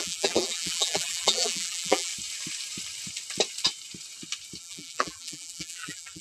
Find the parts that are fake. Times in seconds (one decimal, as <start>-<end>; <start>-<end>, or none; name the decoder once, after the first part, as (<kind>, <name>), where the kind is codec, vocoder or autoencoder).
0.0-2.1 (vocoder, BigVGAN v2); 4.6-6.2